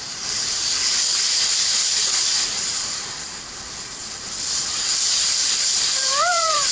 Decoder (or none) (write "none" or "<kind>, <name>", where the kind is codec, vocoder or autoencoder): vocoder, BigVGAN v2